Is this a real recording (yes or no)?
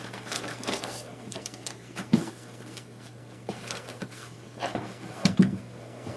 no